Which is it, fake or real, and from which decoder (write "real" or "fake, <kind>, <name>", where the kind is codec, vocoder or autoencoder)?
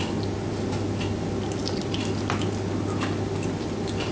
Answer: real